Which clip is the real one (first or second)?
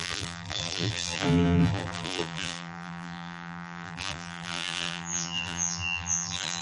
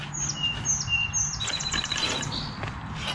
second